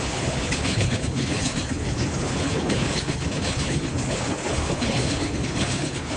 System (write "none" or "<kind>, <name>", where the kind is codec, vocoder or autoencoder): codec, HILCodec